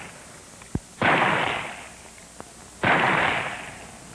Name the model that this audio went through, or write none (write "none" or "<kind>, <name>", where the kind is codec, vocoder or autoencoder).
none